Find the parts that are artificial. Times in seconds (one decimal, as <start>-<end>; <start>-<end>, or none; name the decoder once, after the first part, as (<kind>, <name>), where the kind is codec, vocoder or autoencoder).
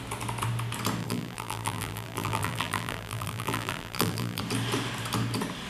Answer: 1.0-4.4 (vocoder, BigVGAN v2)